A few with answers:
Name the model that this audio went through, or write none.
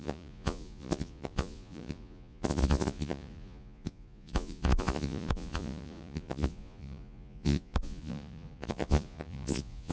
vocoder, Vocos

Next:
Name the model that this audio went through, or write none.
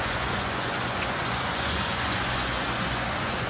vocoder, Vocos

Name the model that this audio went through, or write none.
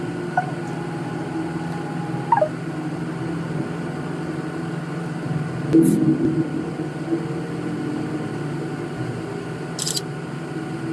none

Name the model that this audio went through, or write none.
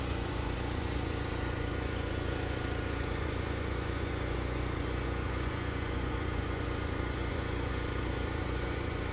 vocoder, Vocos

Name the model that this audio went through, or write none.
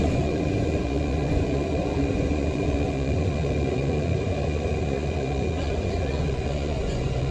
vocoder, Vocos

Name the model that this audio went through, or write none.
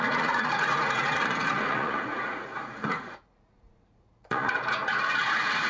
vocoder, Vocos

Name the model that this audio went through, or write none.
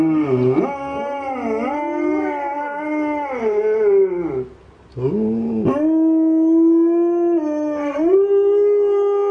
none